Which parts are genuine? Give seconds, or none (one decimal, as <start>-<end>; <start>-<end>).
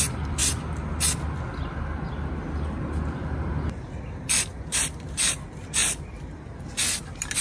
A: 0.0-7.4